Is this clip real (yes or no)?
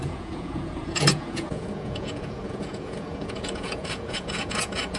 no